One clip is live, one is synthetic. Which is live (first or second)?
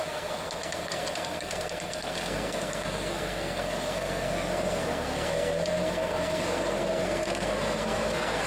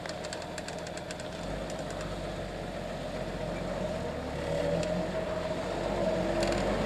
second